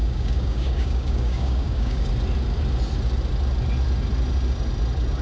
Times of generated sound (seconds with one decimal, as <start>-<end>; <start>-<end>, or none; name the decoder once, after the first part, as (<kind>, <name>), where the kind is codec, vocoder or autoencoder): 0.0-2.1 (codec, DAC)